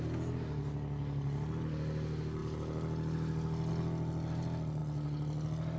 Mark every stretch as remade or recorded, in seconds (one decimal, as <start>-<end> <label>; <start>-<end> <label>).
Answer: 0.0-5.8 recorded